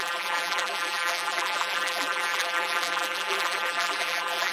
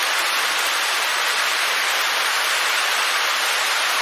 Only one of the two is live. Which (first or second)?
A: second